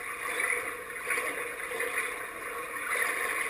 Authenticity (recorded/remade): recorded